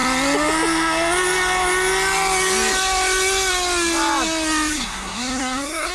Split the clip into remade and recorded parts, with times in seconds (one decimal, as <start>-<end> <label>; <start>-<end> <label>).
0.0-4.7 recorded; 4.7-5.9 remade